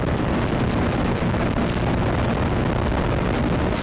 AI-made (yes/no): no